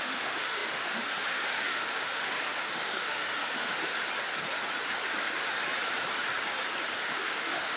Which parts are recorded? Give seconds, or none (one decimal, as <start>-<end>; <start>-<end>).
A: 3.9-7.0